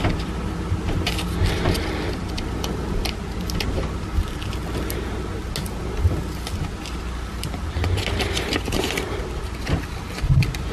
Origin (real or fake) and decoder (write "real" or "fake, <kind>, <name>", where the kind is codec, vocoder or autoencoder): real